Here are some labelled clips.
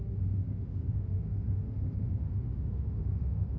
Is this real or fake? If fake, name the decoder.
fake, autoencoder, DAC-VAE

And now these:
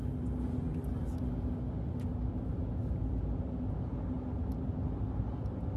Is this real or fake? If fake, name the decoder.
real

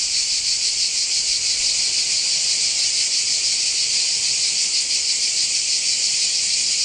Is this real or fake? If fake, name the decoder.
real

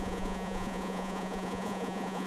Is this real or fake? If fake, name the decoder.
fake, vocoder, Vocos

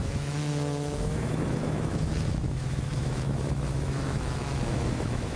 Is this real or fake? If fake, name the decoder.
fake, autoencoder, DAC-VAE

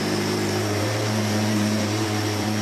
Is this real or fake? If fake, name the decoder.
fake, vocoder, BigVGAN v2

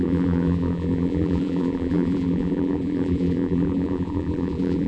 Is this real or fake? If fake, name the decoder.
fake, vocoder, BigVGAN v2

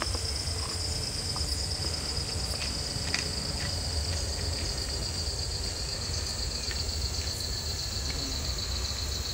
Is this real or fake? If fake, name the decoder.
real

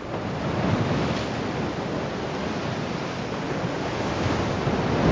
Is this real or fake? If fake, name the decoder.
real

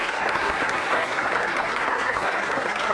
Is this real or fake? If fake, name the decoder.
fake, codec, SNAC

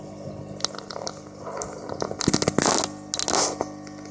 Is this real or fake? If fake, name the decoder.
real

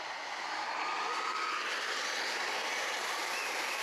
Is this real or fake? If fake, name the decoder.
real